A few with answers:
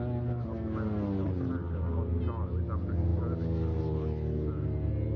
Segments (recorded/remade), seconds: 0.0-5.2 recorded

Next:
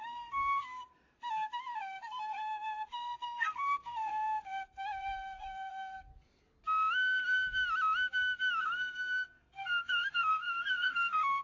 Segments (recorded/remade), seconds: 0.0-0.9 remade; 0.9-1.8 recorded; 1.8-6.1 remade; 6.1-8.6 recorded; 8.6-11.4 remade

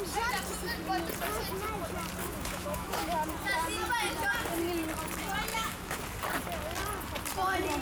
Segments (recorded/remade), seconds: 0.0-2.2 recorded; 2.2-3.2 remade; 3.2-5.5 recorded; 5.5-6.0 remade; 6.0-7.8 recorded

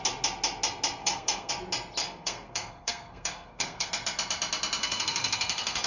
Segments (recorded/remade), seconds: 0.0-1.0 recorded; 1.0-1.5 remade; 1.5-2.0 recorded; 2.0-3.9 remade; 3.9-4.8 recorded; 4.8-5.9 remade